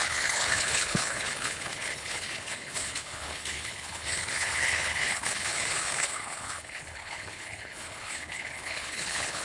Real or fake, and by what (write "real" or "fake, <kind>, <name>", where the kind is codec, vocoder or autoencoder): fake, codec, HILCodec